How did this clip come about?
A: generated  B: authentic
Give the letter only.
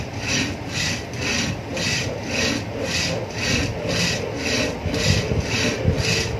B